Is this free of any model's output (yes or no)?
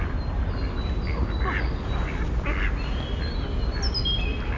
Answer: yes